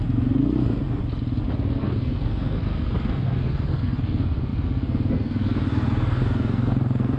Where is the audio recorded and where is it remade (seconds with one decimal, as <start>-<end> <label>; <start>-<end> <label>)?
0.0-1.0 remade; 1.0-1.7 recorded; 1.7-7.2 remade